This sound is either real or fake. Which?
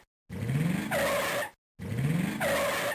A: real